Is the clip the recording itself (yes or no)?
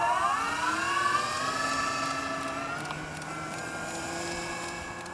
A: yes